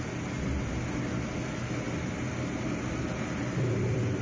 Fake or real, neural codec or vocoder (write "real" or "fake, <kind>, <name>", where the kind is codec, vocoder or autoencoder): real